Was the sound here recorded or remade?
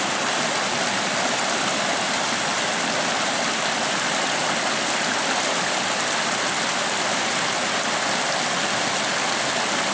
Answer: recorded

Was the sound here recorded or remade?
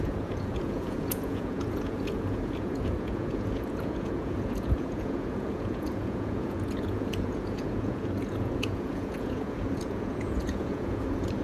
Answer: remade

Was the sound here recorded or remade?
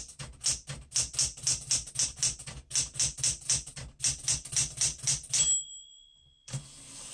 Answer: recorded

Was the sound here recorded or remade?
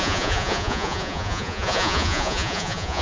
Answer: remade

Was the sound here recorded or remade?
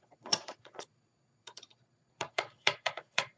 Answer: remade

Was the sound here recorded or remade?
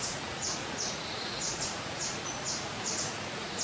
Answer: remade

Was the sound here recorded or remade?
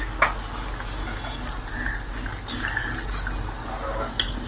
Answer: recorded